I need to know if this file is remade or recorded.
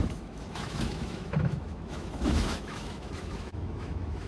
remade